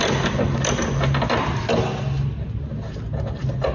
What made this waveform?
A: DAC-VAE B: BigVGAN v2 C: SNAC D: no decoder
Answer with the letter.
D